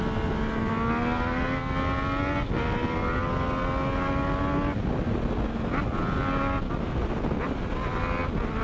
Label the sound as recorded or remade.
recorded